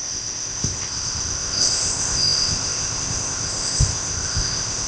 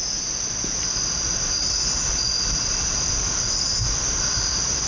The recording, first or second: second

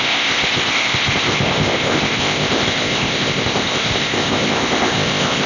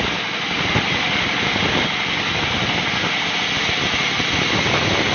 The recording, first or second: second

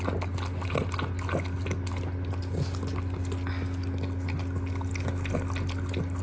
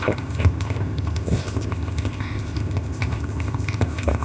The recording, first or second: first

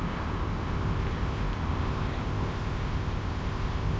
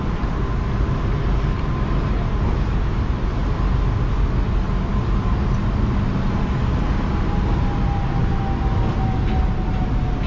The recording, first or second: second